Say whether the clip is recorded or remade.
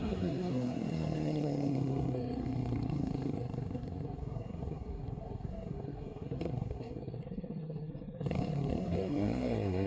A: remade